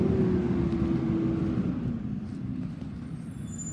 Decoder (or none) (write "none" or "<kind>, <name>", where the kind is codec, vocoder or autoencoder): none